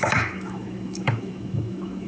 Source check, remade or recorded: remade